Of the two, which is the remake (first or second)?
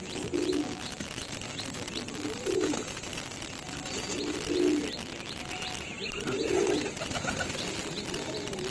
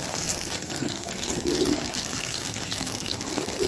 second